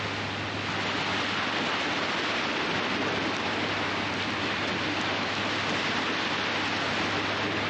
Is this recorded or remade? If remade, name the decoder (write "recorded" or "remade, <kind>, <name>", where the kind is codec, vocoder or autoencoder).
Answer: recorded